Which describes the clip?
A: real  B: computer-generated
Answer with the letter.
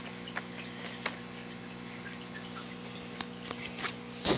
A